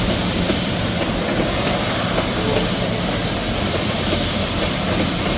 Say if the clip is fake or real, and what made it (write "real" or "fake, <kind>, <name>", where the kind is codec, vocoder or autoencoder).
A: real